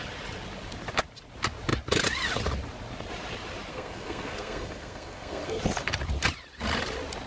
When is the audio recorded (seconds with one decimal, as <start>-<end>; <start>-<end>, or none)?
0.0-3.7; 5.6-7.3